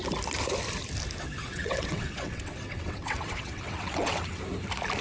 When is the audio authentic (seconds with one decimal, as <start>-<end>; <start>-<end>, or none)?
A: 0.0-1.4; 4.4-5.0